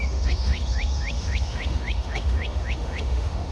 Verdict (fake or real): fake